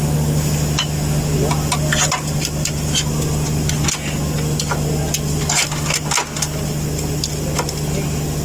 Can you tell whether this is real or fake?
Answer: real